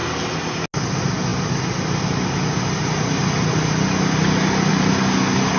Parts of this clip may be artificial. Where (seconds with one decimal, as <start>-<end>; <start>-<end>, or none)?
none